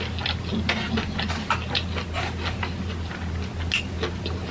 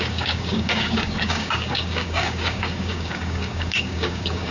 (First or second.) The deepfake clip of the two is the second